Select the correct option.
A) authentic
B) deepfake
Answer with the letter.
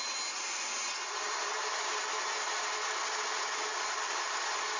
A